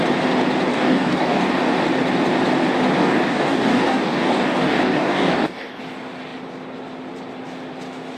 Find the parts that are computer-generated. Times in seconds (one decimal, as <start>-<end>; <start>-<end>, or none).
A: 0.7-1.7; 3.0-5.8